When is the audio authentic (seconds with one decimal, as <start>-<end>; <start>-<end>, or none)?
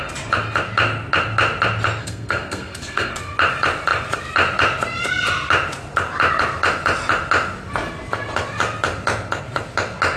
0.0-2.0; 3.1-10.2